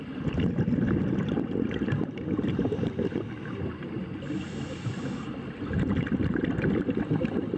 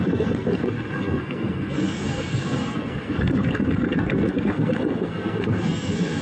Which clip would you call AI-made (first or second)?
second